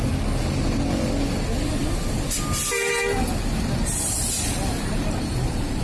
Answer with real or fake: real